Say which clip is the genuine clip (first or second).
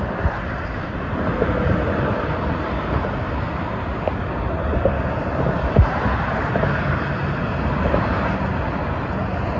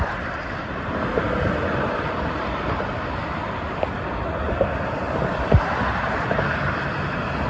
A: first